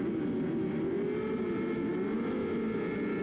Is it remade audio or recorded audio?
recorded